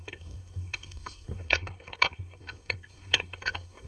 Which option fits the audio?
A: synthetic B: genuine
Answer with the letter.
A